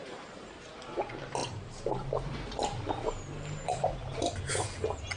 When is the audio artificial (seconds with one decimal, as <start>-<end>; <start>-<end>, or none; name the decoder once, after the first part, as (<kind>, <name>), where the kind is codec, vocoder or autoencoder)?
0.0-0.6 (vocoder, BigVGAN v2); 1.4-4.5